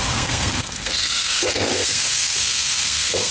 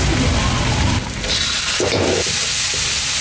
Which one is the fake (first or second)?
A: first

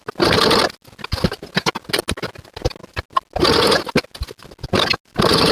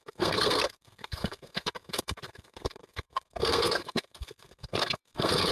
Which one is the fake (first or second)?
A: second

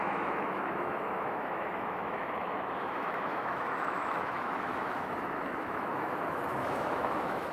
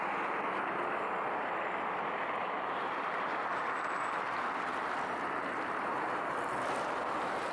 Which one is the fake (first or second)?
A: first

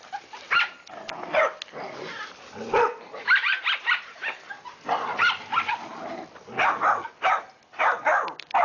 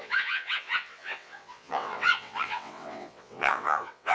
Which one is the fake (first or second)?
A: second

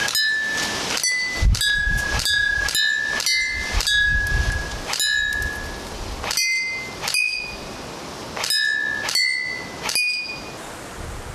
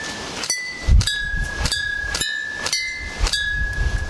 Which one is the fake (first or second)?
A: second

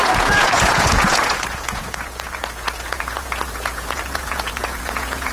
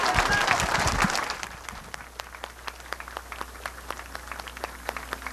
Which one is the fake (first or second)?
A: first